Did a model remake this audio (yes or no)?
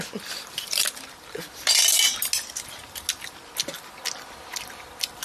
no